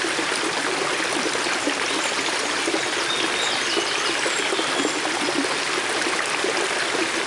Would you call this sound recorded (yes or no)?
yes